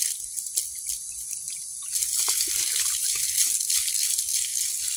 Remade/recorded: recorded